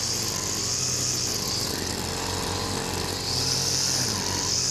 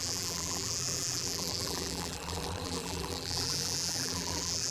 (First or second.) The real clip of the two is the first